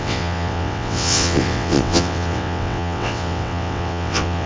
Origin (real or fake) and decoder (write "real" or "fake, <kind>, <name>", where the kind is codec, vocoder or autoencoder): fake, vocoder, WaveNeXt